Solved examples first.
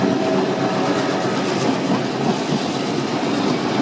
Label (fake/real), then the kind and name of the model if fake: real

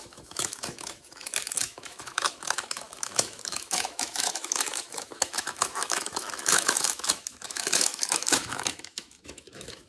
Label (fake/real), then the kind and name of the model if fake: fake, autoencoder, DAC-VAE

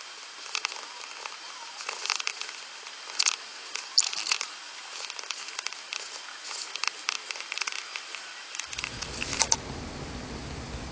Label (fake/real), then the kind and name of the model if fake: real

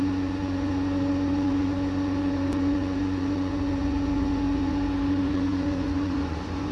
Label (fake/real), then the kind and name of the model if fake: fake, vocoder, Vocos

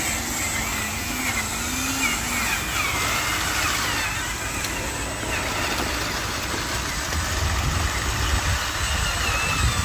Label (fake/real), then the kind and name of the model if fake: real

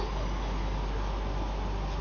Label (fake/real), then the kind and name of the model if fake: real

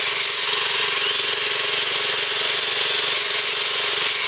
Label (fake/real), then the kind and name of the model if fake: fake, vocoder, Vocos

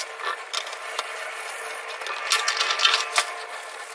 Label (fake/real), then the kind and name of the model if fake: real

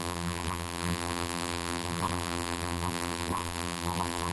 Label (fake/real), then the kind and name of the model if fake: fake, vocoder, BigVGAN v2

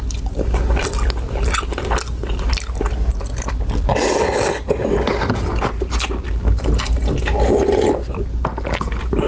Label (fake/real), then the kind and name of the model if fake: real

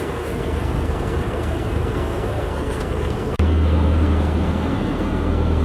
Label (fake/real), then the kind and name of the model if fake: fake, codec, SNAC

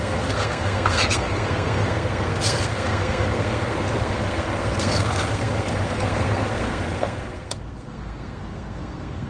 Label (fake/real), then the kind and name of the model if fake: fake, codec, SNAC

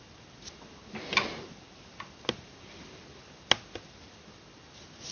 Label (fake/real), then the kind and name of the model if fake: real